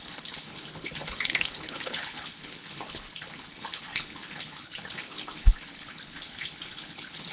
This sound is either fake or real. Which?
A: fake